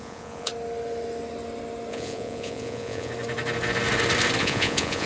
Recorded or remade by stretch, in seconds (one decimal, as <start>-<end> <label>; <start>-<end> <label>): 0.0-0.5 remade; 0.5-1.9 recorded; 1.9-3.1 remade; 3.1-4.4 recorded; 4.4-5.1 remade